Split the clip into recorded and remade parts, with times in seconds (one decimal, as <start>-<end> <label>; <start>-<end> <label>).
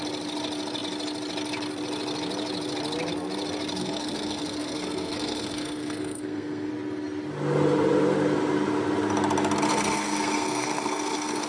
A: 0.0-3.8 recorded; 3.8-6.7 remade; 6.7-9.7 recorded; 9.7-11.5 remade